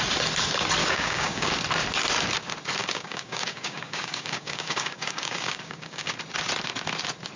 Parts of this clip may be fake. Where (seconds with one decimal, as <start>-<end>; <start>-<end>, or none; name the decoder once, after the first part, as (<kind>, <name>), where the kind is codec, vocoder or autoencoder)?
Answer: 0.8-1.5 (codec, DAC); 2.8-6.1